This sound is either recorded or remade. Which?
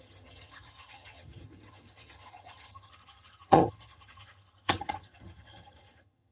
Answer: remade